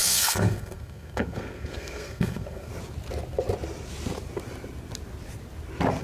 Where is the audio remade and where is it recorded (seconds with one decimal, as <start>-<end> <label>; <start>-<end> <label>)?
0.0-2.7 remade; 2.7-6.0 recorded